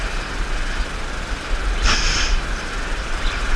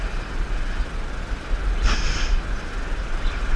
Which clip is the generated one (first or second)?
first